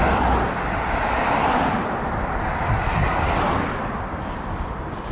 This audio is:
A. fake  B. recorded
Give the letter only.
A